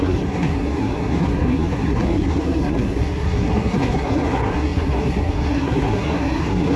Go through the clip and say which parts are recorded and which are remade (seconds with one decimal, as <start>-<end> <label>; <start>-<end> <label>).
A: 0.0-6.8 remade